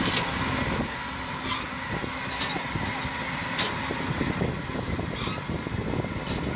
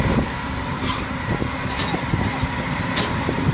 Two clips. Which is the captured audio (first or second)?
first